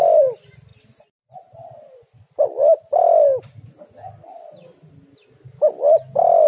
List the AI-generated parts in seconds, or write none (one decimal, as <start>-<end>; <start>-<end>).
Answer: none